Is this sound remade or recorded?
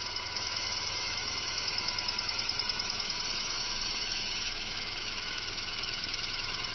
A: remade